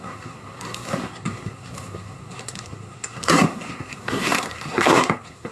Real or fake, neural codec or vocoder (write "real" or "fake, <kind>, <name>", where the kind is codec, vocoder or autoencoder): fake, codec, SNAC